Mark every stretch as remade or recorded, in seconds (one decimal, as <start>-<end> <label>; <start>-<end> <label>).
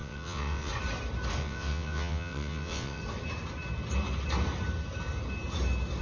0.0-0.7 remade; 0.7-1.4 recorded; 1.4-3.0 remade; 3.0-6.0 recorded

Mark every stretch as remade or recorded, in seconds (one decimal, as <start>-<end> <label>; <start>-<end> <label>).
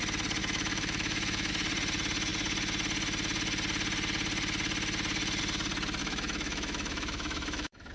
0.0-0.4 recorded; 0.4-1.5 remade; 1.5-6.0 recorded; 6.0-7.9 remade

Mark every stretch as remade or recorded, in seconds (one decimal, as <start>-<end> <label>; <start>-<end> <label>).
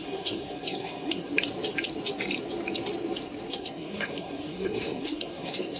0.0-1.3 remade; 1.3-3.5 recorded; 3.5-5.8 remade